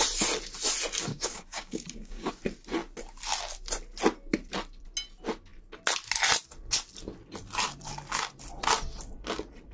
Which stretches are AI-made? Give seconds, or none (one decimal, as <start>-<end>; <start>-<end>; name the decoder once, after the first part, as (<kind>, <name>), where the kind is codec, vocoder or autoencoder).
1.1-2.3 (codec, DAC)